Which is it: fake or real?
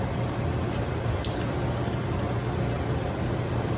real